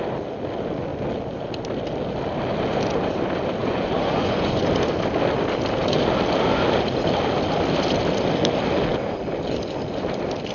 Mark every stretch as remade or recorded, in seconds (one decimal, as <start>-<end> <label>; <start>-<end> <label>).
0.0-3.6 recorded; 3.6-4.7 remade; 4.7-10.5 recorded